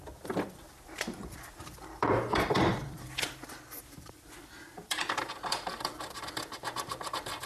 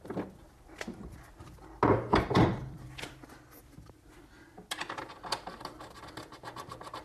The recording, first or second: second